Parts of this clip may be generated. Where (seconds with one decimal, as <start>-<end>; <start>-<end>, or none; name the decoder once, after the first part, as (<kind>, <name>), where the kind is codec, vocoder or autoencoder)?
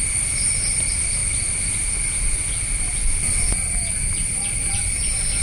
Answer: none